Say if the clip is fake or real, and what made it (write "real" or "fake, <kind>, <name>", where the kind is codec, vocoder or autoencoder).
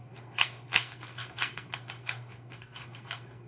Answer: fake, codec, SNAC